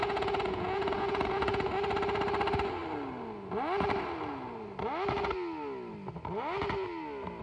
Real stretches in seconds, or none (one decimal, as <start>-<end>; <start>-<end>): 1.7-7.4